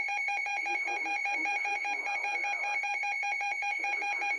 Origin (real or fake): fake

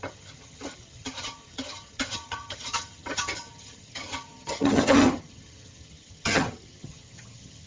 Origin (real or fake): fake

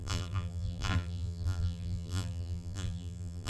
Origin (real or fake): fake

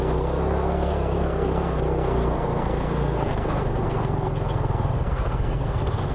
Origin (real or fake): fake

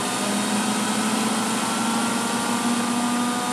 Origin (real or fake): real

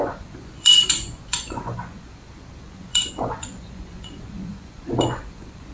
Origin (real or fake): fake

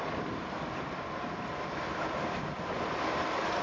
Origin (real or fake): real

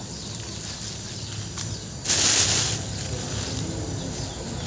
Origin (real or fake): real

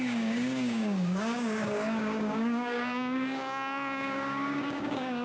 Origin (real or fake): fake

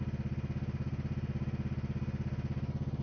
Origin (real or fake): real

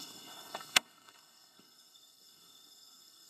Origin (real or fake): fake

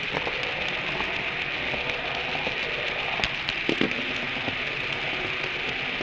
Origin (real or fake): real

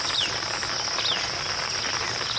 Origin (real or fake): real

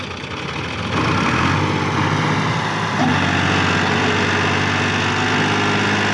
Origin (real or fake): real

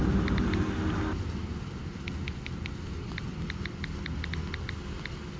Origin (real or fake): real